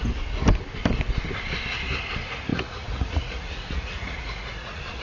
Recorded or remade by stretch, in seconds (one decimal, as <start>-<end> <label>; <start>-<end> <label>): 0.0-2.5 recorded; 2.5-5.0 remade